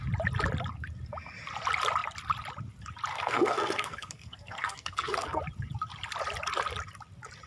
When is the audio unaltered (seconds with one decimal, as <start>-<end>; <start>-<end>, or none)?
0.0-3.1; 5.4-7.5